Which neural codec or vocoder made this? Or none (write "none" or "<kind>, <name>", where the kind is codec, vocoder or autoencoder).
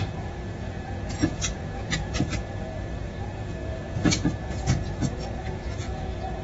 vocoder, Vocos